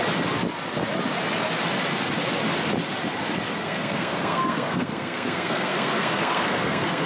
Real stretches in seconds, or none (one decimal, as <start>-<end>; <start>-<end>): 0.0-3.6